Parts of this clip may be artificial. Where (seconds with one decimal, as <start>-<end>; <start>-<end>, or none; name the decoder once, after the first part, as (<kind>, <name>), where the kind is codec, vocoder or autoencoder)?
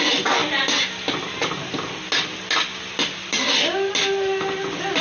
none